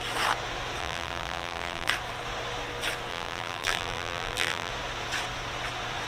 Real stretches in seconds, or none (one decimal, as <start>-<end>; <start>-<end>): 0.0-0.8; 1.9-3.1; 4.7-6.1